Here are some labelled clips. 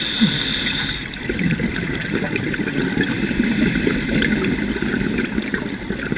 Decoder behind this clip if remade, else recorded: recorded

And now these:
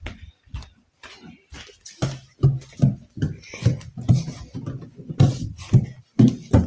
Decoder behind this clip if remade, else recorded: recorded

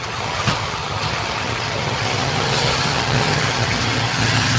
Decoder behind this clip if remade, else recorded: remade, vocoder, HiFi-GAN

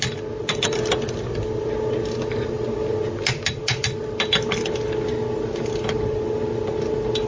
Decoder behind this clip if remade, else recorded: recorded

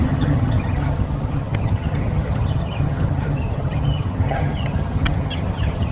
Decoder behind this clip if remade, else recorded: remade, vocoder, HiFi-GAN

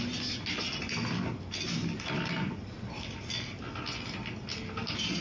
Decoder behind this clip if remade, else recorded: recorded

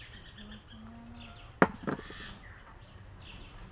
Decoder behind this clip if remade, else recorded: recorded